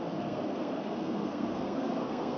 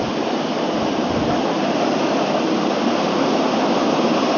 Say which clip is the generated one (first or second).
first